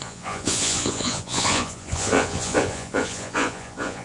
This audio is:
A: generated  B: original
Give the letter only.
A